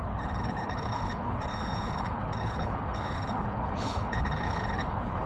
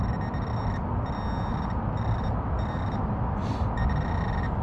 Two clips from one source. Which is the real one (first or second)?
second